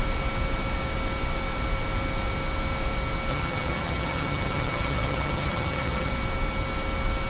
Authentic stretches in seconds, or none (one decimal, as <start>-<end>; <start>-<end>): 0.0-3.3; 6.1-7.3

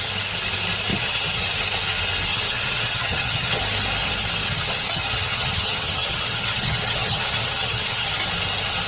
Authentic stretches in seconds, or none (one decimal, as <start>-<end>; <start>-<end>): 0.0-0.9; 1.4-2.3; 3.6-4.4; 8.2-8.9

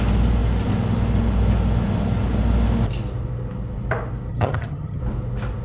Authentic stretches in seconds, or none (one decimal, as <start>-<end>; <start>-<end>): 0.0-4.3; 5.0-5.6

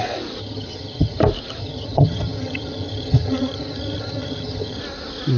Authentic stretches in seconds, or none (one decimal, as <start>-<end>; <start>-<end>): 0.0-0.4; 1.2-1.6; 4.8-5.4

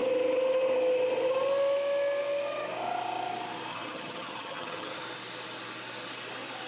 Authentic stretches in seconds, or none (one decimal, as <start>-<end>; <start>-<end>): 0.0-3.7; 5.0-6.7